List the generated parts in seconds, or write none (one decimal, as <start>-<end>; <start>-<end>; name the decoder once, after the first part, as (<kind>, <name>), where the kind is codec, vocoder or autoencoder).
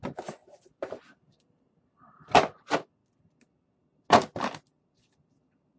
0.4-2.0 (vocoder, BigVGAN v2)